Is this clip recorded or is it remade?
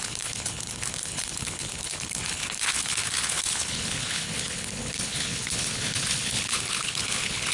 remade